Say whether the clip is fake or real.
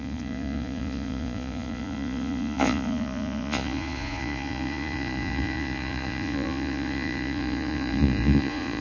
fake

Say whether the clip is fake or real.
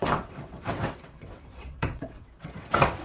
fake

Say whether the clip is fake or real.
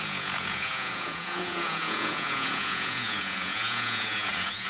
fake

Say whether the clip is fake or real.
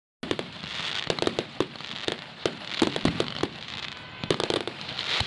real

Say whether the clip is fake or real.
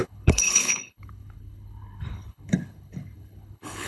fake